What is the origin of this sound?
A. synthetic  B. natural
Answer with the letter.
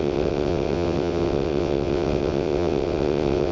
A